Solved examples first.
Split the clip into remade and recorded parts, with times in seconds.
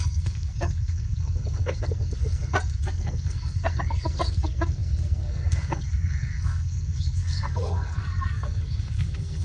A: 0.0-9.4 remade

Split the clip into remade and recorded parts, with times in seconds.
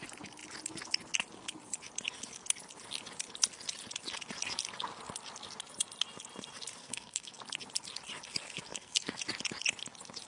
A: 0.0-6.8 recorded; 6.8-7.4 remade; 7.4-8.7 recorded; 8.7-9.2 remade; 9.2-10.3 recorded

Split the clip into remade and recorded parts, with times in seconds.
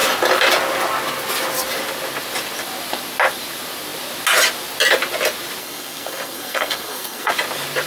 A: 0.0-5.6 recorded; 5.6-7.3 remade; 7.3-7.9 recorded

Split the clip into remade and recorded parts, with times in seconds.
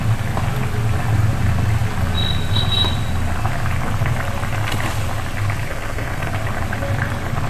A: 0.0-5.7 recorded; 5.7-6.3 remade; 6.3-7.5 recorded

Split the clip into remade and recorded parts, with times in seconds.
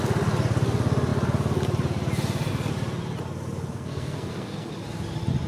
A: 0.0-3.7 recorded; 3.7-4.7 remade; 4.7-5.5 recorded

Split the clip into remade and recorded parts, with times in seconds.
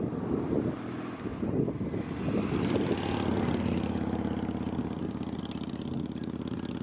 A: 0.0-6.8 recorded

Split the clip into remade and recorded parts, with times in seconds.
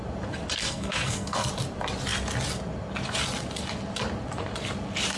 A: 0.0-0.6 recorded; 0.6-1.5 remade; 1.5-5.2 recorded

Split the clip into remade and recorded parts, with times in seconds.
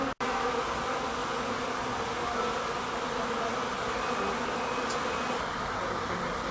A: 0.0-6.5 recorded